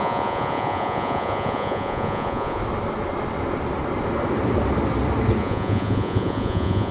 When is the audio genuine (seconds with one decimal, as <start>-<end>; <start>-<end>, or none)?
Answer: 2.6-5.4